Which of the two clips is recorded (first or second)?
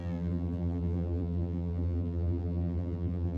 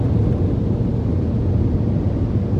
second